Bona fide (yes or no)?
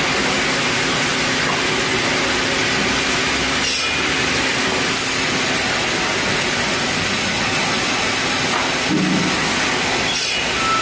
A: yes